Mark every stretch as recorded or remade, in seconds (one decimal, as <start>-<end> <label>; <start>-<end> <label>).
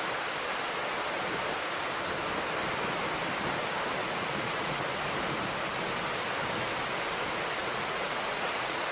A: 0.0-4.0 recorded; 4.0-4.8 remade; 4.8-7.6 recorded; 7.6-8.9 remade